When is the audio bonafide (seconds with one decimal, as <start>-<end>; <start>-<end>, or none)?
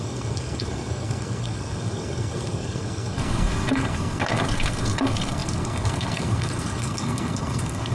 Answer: none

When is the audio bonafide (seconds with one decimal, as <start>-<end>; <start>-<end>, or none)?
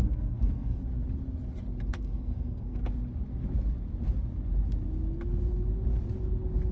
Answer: 0.8-1.9; 2.8-6.7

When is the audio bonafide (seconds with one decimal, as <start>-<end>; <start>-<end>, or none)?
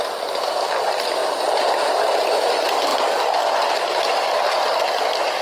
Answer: 0.0-5.4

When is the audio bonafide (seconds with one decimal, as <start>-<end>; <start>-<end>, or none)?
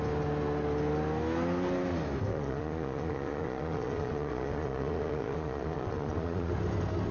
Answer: 0.0-2.3; 6.5-7.1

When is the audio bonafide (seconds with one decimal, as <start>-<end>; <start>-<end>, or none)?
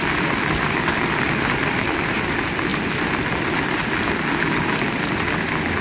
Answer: 0.0-5.8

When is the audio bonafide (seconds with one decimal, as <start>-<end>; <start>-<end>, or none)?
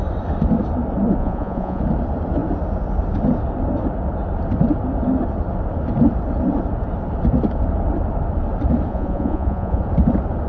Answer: 0.0-1.2; 1.8-8.9; 9.8-10.5